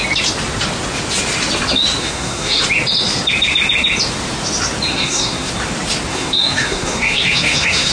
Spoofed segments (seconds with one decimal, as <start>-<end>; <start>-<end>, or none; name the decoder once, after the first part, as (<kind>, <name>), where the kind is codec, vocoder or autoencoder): 2.0-2.6 (codec, SNAC); 4.9-5.5; 6.1-7.9